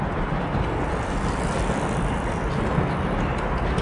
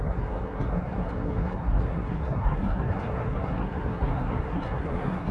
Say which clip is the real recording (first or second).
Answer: first